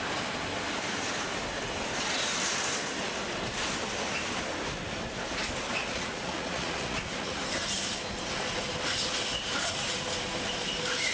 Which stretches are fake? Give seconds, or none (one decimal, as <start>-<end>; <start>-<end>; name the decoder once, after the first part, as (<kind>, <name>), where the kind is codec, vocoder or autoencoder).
5.8-7.4 (vocoder, Vocos)